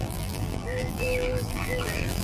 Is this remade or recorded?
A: remade